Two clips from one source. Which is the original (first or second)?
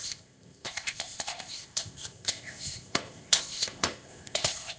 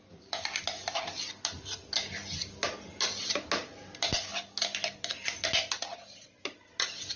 second